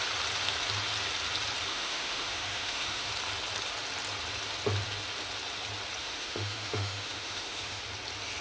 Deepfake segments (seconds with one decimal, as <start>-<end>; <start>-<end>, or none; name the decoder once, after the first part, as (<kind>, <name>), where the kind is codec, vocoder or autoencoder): 1.7-3.1 (autoencoder, DAC-VAE); 6.0-7.8